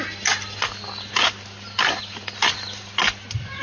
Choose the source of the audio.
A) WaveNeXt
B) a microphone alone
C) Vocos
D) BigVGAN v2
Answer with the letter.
B